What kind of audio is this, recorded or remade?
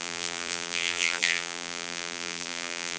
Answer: remade